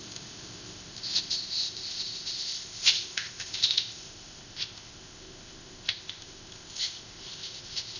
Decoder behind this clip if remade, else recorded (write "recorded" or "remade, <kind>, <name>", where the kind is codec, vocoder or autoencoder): remade, codec, ZipCodec